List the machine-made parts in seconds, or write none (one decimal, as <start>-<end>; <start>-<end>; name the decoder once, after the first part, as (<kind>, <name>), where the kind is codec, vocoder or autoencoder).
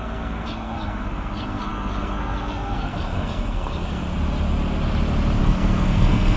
0.0-4.0 (codec, SNAC); 5.4-6.4